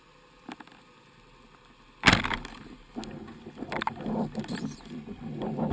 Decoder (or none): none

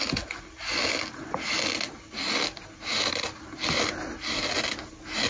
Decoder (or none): none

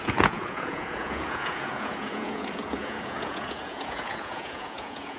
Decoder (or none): vocoder, Vocos